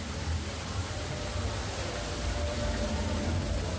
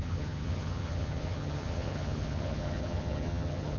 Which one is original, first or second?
first